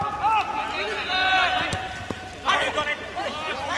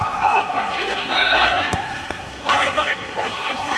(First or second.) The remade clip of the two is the second